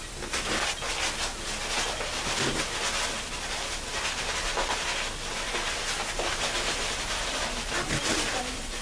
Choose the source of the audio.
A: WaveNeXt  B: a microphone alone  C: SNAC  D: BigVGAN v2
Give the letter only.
B